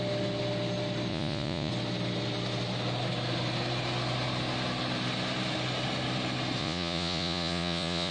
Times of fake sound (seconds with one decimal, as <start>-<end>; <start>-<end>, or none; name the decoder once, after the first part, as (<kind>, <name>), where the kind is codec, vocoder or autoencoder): 1.1-1.7 (vocoder, Vocos); 6.6-8.1